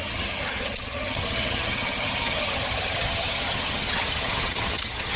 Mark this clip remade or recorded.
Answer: remade